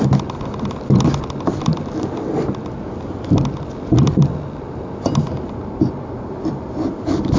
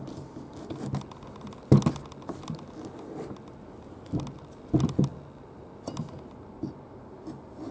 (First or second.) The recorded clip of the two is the second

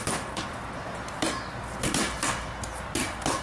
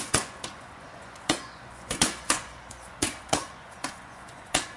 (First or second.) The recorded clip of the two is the first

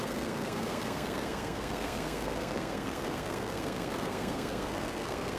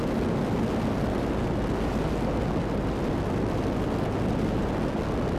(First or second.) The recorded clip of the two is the second